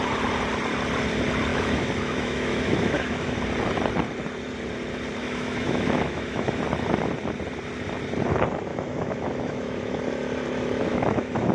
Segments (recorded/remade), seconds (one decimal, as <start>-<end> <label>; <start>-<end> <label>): 0.0-1.5 recorded; 1.5-3.4 remade; 3.4-5.2 recorded; 5.2-6.6 remade; 6.6-8.7 recorded; 8.7-10.0 remade; 10.0-10.9 recorded; 10.9-11.5 remade